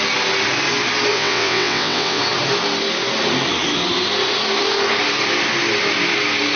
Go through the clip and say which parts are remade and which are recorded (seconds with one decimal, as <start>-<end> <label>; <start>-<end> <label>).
0.0-1.1 recorded; 1.1-2.2 remade; 2.2-6.6 recorded

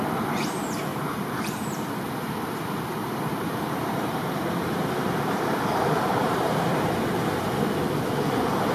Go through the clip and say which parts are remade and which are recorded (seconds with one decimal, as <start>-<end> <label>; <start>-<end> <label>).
0.0-0.9 recorded; 0.9-1.9 remade; 1.9-3.0 recorded; 3.0-6.9 remade; 6.9-8.7 recorded

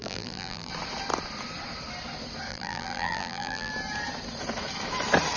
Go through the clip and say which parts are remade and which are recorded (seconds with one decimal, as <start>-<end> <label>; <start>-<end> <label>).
0.0-0.7 remade; 0.7-2.5 recorded; 2.5-3.7 remade; 3.7-5.4 recorded

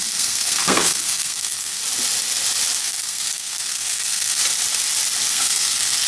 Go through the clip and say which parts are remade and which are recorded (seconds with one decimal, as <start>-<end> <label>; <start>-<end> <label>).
0.0-1.8 remade; 1.8-2.8 recorded; 2.8-4.4 remade; 4.4-5.3 recorded; 5.3-6.1 remade

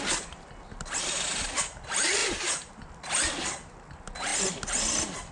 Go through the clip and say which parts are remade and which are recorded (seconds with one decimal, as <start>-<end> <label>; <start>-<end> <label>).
0.0-2.2 recorded; 2.2-2.7 remade; 2.7-5.3 recorded

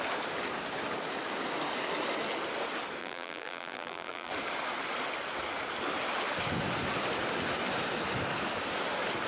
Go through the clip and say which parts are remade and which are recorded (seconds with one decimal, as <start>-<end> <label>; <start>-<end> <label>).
0.0-3.0 recorded; 3.0-4.3 remade; 4.3-9.3 recorded